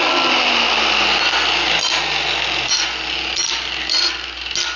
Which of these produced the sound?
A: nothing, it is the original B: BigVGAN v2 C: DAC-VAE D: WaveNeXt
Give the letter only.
A